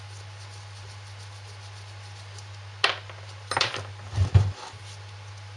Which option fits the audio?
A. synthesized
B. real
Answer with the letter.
B